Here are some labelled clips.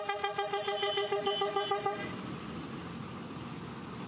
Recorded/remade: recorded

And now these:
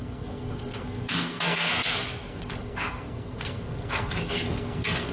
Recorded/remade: remade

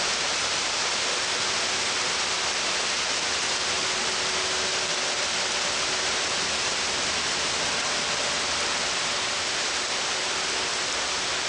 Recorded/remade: recorded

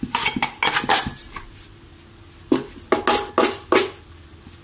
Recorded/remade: recorded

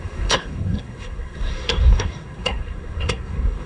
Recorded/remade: remade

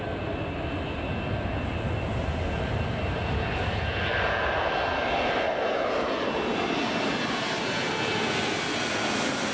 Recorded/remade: recorded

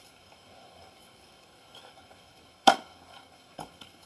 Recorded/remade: remade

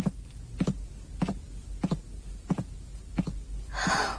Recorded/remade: recorded